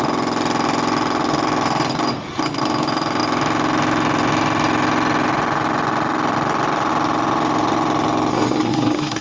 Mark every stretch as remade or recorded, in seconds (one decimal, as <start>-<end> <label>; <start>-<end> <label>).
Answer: 0.0-8.3 recorded; 8.3-9.2 remade